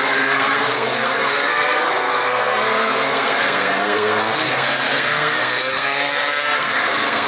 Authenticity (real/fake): fake